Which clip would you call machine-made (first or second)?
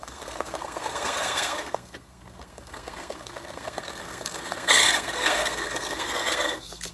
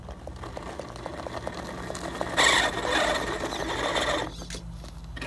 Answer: first